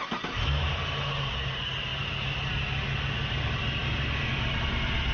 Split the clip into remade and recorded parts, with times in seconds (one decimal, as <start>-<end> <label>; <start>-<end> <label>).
0.0-5.1 recorded